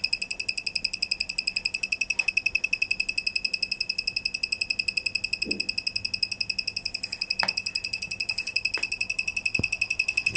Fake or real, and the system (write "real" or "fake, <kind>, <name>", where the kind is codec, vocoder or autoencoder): real